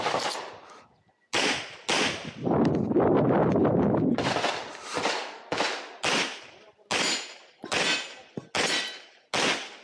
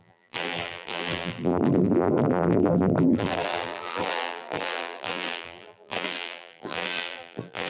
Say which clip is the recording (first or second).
first